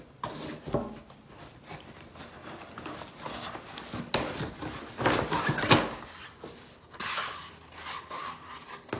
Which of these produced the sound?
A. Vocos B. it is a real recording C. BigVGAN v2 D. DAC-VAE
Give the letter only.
B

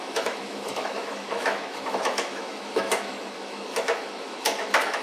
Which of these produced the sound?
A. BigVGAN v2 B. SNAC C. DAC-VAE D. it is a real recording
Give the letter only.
C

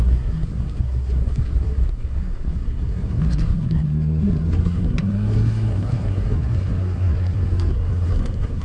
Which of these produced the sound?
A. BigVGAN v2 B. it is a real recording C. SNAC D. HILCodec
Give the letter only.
C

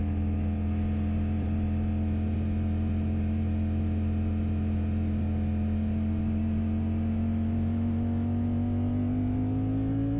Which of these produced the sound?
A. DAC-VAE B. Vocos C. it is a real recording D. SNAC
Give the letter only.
C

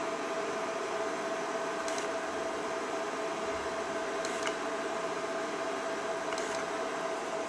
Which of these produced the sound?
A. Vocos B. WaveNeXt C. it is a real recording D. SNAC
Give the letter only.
C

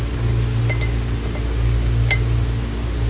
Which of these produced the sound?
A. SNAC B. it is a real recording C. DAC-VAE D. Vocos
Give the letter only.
B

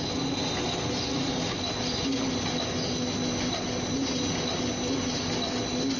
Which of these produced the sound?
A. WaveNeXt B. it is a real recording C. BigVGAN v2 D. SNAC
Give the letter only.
B